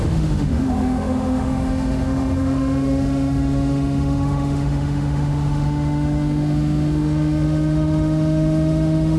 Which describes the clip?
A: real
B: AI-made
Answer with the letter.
B